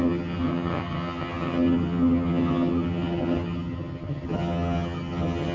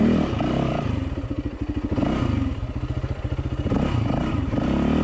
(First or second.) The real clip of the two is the second